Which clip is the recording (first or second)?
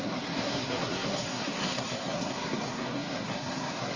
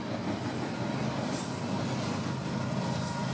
second